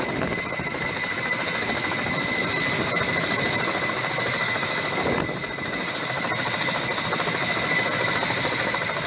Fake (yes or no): no